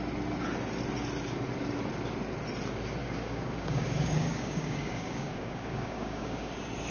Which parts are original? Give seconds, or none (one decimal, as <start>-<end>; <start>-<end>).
0.0-3.0; 6.5-6.9